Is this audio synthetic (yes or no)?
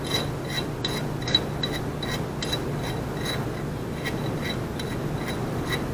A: no